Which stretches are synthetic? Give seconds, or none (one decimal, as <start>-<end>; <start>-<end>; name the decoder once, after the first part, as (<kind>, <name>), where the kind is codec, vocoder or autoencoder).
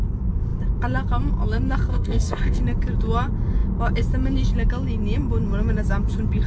1.9-2.6 (codec, DAC)